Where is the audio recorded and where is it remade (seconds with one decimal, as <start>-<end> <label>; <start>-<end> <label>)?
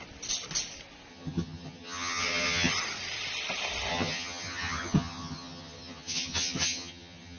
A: 0.0-1.1 recorded; 1.1-2.7 remade; 2.7-3.9 recorded; 3.9-7.4 remade